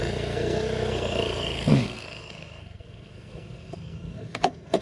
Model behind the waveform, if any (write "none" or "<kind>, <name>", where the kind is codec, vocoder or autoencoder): codec, SNAC